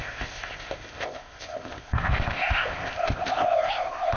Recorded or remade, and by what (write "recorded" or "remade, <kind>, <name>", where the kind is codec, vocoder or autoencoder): remade, codec, ZipCodec